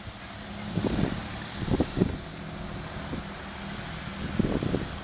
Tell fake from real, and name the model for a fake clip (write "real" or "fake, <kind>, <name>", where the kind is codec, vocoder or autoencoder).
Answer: real